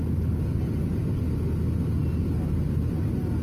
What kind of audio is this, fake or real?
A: real